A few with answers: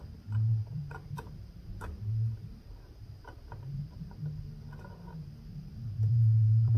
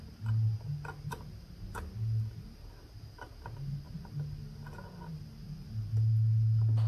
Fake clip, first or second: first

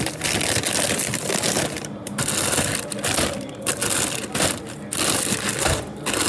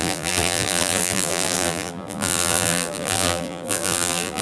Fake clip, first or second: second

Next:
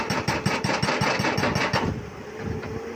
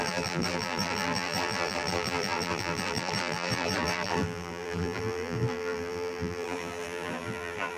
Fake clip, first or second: second